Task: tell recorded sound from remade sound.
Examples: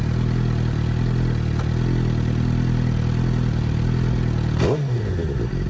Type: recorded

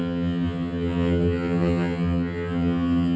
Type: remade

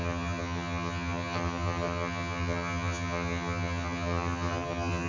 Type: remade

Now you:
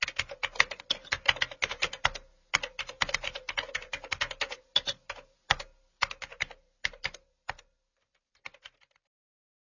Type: recorded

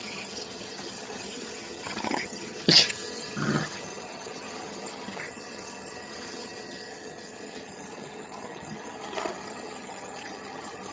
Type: remade